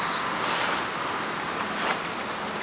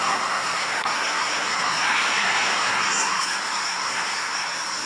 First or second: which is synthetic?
second